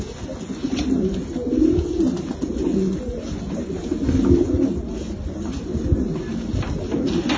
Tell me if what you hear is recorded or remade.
recorded